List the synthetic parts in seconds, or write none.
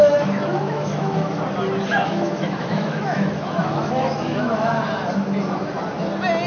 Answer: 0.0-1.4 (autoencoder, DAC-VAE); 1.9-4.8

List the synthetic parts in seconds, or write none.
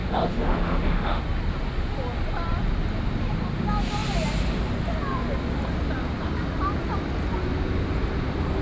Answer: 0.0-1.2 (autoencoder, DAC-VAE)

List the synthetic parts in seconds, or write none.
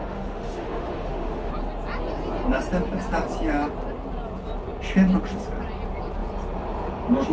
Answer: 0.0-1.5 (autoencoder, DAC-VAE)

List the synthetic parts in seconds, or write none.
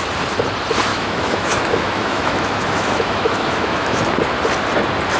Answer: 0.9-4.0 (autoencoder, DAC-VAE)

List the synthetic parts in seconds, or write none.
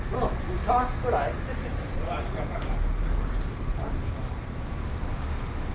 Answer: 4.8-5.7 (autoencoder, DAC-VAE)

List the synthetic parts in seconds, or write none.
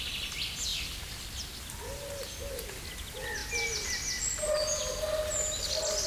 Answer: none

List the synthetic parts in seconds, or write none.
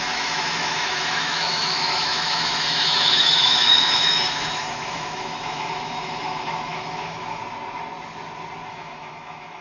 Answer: 0.0-7.4 (autoencoder, DAC-VAE); 8.7-9.6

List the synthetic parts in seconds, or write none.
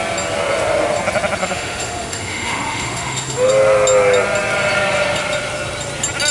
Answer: 1.4-3.5 (autoencoder, DAC-VAE)